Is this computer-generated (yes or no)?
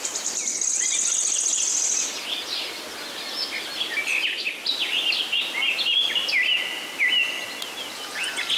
no